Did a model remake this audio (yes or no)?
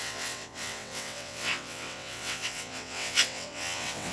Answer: yes